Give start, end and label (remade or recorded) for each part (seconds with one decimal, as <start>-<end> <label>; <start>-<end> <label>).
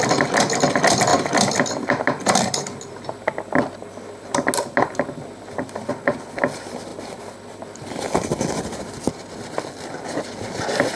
0.0-11.0 recorded